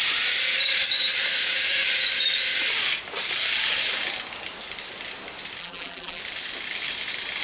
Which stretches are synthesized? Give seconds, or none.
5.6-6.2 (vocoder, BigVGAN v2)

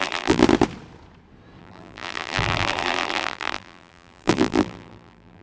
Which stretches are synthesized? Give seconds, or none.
0.0-0.4 (vocoder, BigVGAN v2); 1.6-5.4